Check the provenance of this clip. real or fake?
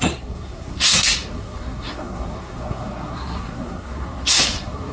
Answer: fake